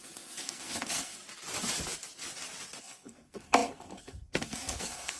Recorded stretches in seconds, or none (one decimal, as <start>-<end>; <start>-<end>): 1.2-2.8